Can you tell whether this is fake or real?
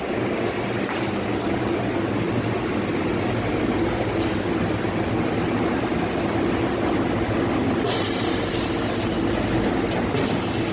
real